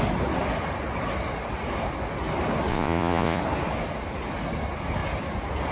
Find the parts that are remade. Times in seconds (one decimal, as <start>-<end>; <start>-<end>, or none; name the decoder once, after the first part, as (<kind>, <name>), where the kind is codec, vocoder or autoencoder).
2.7-3.4 (vocoder, Vocos)